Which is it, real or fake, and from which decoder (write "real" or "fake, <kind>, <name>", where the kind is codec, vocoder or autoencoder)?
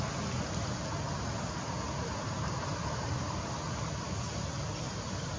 real